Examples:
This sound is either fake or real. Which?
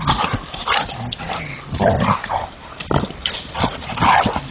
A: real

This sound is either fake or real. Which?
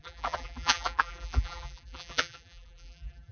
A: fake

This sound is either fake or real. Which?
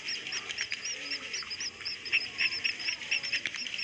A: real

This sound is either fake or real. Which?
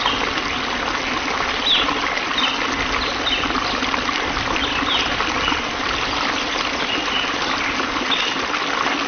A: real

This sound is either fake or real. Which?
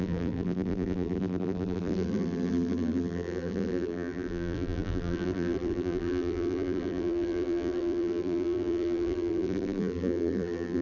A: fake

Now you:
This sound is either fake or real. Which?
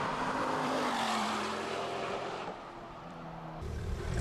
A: fake